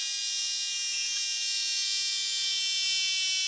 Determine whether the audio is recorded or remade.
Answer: recorded